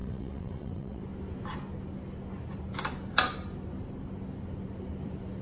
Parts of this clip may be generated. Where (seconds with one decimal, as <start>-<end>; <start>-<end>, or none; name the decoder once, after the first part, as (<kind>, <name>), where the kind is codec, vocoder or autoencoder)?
0.0-1.0 (vocoder, WaveNeXt)